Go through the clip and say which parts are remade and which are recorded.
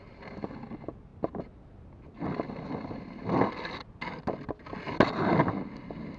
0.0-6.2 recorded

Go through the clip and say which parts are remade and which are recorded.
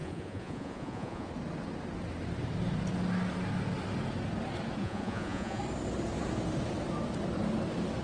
0.0-1.3 remade; 1.3-4.8 recorded; 4.8-5.6 remade; 5.6-8.0 recorded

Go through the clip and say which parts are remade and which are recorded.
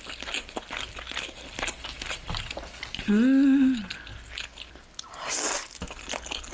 0.0-6.5 recorded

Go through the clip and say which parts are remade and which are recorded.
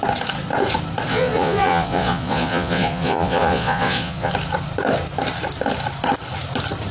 0.0-1.1 recorded; 1.1-4.3 remade; 4.3-6.9 recorded